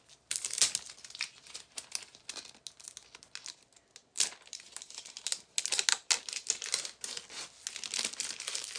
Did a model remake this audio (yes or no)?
no